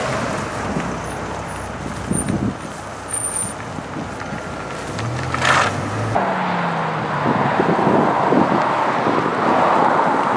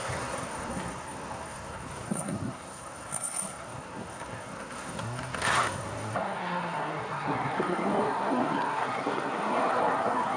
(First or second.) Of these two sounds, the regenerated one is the second